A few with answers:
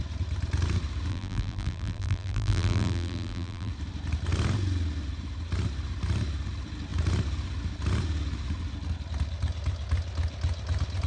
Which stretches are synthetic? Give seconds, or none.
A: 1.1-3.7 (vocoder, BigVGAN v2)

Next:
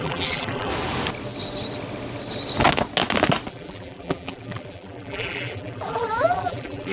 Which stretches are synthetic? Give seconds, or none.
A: 0.0-0.7 (vocoder, BigVGAN v2); 3.5-6.9

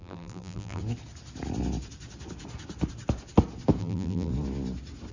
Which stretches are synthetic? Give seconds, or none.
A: 0.0-0.8 (vocoder, BigVGAN v2); 3.8-4.3